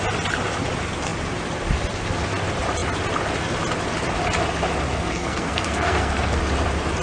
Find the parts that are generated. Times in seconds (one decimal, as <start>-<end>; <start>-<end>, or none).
4.9-6.4